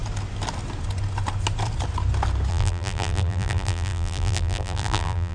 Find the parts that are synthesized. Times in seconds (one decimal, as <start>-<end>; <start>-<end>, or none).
2.5-5.3